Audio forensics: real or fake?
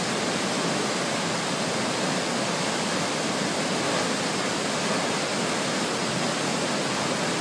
real